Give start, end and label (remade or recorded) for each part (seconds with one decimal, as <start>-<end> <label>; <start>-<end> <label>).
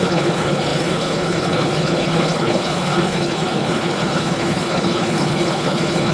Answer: 0.0-6.1 remade